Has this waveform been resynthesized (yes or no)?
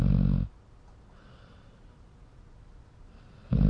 no